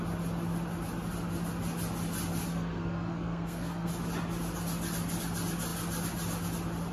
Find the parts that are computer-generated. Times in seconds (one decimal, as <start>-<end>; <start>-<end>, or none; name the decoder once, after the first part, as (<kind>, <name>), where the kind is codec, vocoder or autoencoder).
2.5-3.9 (codec, SNAC)